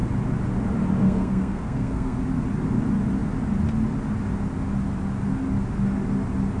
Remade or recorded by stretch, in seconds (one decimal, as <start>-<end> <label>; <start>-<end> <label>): 0.0-1.0 recorded; 1.0-2.2 remade; 2.2-6.6 recorded